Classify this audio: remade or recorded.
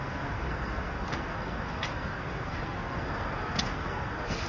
remade